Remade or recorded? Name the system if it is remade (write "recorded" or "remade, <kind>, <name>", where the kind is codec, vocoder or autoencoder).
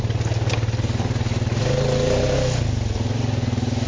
recorded